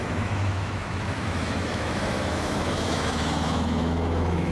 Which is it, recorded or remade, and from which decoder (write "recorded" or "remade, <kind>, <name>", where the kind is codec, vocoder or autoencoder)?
remade, autoencoder, DAC-VAE